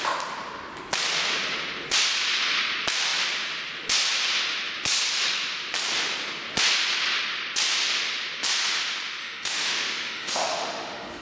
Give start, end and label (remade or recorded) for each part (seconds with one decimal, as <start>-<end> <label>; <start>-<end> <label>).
0.0-9.2 recorded; 9.2-11.2 remade